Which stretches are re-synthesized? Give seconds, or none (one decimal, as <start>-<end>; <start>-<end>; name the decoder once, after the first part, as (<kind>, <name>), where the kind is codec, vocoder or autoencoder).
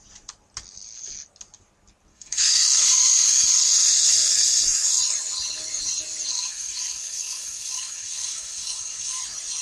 2.1-5.0 (codec, SNAC); 6.3-9.2